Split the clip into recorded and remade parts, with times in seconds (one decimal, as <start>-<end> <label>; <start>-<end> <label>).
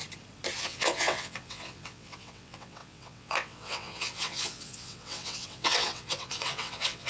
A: 0.0-0.6 recorded; 0.6-7.1 remade